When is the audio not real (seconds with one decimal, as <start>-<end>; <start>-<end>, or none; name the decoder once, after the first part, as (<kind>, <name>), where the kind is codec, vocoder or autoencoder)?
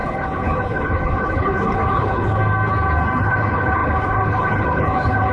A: 0.0-2.4 (codec, HILCodec); 3.2-5.3